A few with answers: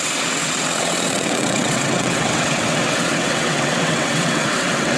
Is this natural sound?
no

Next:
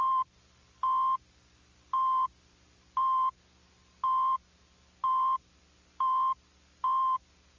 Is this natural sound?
yes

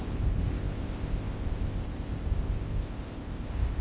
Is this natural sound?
no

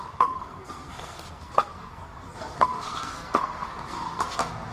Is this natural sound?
no